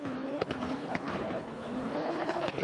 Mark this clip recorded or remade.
remade